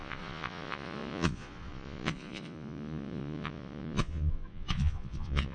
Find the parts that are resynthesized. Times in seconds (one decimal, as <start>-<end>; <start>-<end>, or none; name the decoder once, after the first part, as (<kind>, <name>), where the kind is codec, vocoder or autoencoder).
0.0-5.5 (vocoder, Vocos)